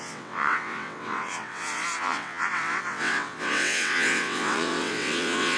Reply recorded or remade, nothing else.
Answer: remade